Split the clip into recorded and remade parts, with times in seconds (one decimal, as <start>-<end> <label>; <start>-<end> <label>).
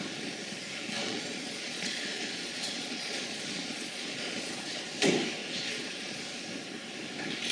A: 0.0-1.0 recorded; 1.0-4.8 remade; 4.8-5.4 recorded; 5.4-6.2 remade; 6.2-7.5 recorded